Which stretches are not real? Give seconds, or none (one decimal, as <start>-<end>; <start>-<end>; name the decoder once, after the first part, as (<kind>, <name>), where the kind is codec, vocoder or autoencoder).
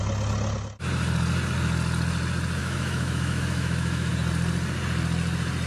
2.6-4.1 (autoencoder, DAC-VAE)